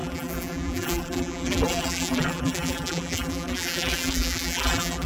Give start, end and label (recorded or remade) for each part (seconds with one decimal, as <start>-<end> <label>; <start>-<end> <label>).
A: 0.0-5.1 remade